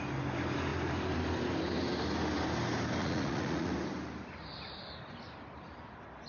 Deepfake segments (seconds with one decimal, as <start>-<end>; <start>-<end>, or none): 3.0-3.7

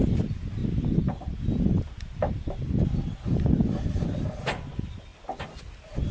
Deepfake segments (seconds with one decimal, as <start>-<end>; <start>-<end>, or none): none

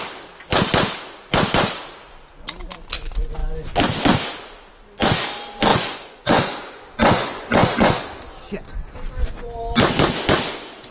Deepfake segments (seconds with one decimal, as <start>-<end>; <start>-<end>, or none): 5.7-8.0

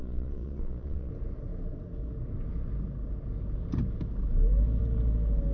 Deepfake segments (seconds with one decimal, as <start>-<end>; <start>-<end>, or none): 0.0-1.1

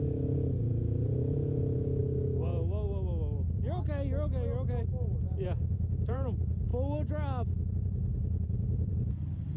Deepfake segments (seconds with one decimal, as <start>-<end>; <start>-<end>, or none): 0.0-2.0; 5.2-6.7; 7.7-9.6

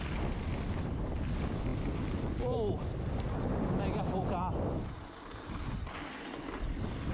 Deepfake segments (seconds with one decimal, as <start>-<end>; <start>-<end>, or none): none

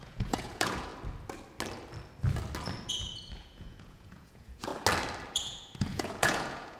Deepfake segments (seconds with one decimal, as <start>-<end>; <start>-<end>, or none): 0.0-0.9; 2.9-4.7; 5.3-6.8